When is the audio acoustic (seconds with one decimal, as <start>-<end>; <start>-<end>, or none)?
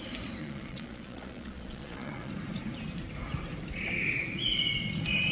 0.0-0.4; 2.3-5.3